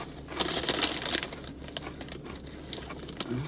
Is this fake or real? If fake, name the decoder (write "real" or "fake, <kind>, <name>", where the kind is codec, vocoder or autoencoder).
real